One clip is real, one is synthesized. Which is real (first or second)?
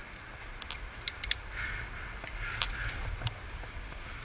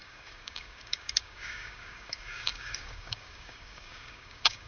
first